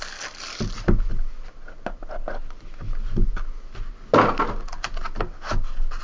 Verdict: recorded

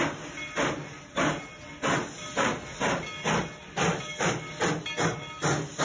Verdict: recorded